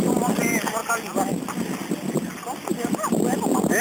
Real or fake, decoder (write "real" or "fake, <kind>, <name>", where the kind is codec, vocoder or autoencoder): real